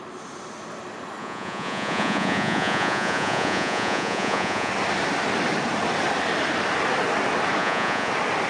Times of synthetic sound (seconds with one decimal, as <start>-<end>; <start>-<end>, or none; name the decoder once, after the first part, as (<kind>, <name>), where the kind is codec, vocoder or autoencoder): 1.2-4.7 (vocoder, Vocos); 7.6-8.1